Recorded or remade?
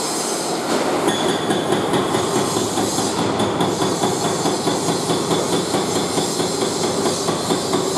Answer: recorded